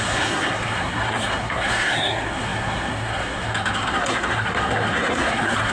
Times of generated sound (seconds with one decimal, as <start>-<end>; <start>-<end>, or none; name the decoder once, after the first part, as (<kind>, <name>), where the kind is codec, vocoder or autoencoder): 0.0-5.7 (codec, SNAC)